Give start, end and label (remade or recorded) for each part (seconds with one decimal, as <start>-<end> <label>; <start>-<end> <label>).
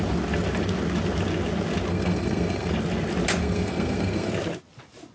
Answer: 0.0-1.9 recorded; 1.9-2.7 remade; 2.7-3.4 recorded; 3.4-4.3 remade; 4.3-5.1 recorded